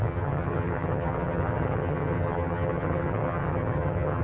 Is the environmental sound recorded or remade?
remade